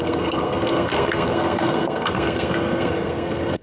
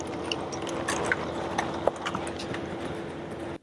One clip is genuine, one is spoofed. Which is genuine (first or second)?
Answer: second